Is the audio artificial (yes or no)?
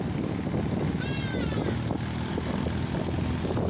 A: no